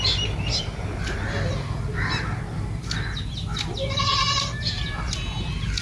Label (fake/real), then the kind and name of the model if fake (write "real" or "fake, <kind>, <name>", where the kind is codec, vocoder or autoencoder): real